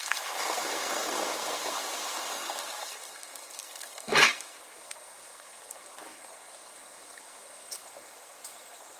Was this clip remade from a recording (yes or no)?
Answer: yes